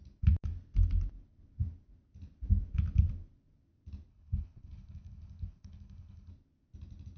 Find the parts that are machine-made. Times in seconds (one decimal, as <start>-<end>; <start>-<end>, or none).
4.1-6.3

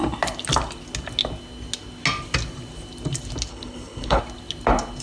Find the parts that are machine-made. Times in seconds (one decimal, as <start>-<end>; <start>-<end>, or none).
3.5-4.2

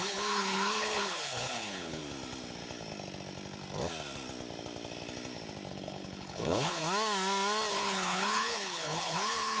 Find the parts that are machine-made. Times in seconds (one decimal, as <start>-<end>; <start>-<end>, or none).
0.0-2.0; 5.7-6.8; 7.7-9.6

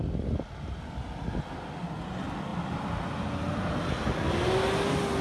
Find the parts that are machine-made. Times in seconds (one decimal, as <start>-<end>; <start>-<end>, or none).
none

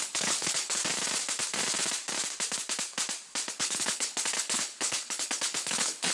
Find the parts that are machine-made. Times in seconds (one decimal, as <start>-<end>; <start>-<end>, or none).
0.0-0.8; 3.5-6.1

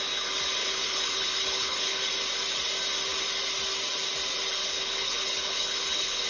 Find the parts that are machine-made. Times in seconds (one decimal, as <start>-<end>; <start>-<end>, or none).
0.6-2.1; 4.6-6.3

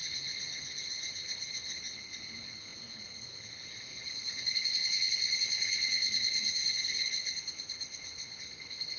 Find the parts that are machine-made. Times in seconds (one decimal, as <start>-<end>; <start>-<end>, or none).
0.0-9.0

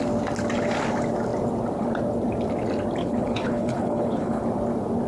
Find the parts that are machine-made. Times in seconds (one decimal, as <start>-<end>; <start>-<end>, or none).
3.0-4.4